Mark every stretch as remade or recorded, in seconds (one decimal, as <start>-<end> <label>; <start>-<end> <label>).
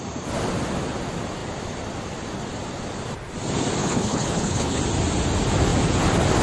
0.0-3.8 recorded; 3.8-4.8 remade; 4.8-6.4 recorded